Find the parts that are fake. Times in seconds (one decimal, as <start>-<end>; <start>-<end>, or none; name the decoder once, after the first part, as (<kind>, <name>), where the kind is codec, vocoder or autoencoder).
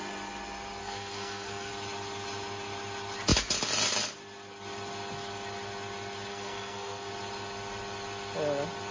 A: 0.8-1.7 (codec, SNAC); 6.3-7.1